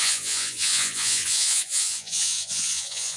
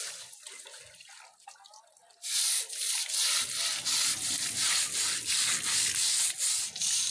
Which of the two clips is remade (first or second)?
first